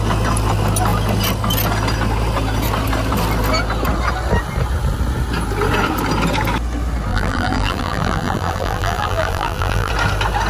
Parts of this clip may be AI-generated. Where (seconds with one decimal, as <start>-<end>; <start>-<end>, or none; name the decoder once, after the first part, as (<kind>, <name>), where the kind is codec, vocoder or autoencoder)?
7.1-9.9 (vocoder, BigVGAN v2)